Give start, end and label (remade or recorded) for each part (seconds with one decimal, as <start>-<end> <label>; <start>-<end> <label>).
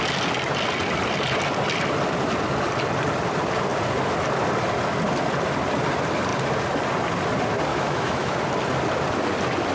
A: 0.0-7.7 recorded; 7.7-8.4 remade; 8.4-9.7 recorded